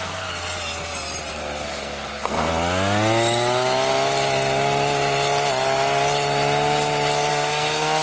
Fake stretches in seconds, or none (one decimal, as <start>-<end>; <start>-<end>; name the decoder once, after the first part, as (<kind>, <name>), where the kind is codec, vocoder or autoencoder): 0.0-0.4 (codec, SNAC); 1.3-2.5; 7.3-8.0